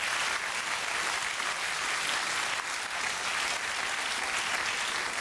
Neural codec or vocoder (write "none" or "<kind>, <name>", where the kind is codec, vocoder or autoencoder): none